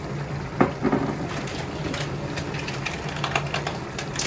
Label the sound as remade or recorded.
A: recorded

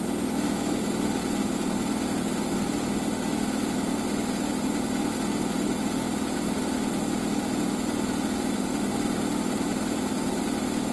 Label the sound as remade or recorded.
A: recorded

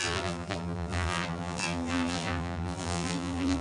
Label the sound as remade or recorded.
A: remade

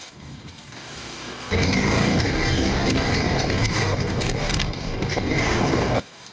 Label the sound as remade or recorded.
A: remade